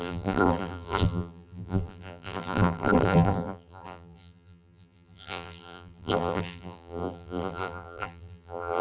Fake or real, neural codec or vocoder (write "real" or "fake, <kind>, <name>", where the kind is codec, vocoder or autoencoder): fake, vocoder, BigVGAN v2